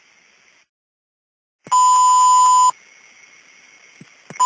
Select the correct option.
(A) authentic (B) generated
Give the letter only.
A